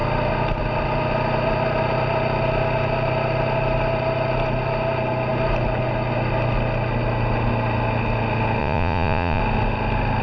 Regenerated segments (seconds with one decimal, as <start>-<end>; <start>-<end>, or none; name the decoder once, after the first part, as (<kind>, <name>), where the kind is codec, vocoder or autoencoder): 8.6-9.4 (vocoder, Vocos)